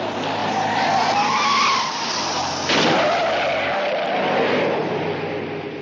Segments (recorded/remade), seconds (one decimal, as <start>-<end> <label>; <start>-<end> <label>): 0.0-5.8 recorded